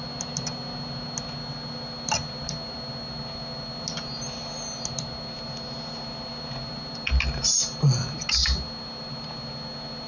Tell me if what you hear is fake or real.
real